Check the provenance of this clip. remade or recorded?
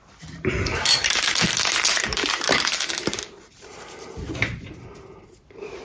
remade